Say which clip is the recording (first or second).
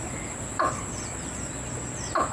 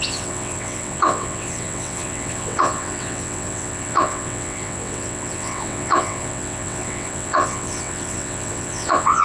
first